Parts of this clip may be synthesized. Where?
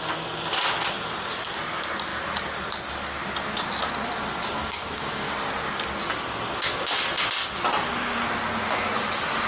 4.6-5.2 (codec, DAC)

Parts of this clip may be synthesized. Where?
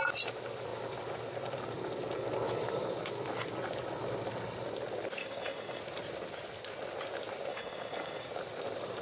5.2-5.8 (codec, DAC); 7.5-8.3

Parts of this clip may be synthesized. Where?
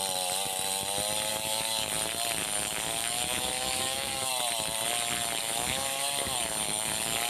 1.3-1.9 (codec, DAC); 2.4-4.3; 5.4-7.3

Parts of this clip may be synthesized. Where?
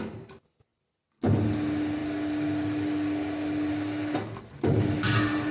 none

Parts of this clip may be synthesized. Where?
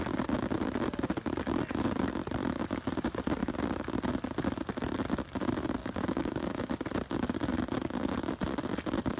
5.8-6.7 (codec, DAC)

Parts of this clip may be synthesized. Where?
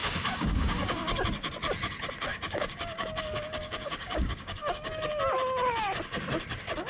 0.0-1.2 (codec, DAC); 2.3-5.1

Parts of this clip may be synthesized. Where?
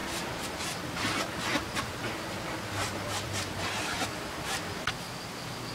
none